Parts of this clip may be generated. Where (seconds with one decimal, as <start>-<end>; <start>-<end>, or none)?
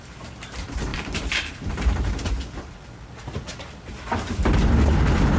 0.9-2.2; 3.5-4.3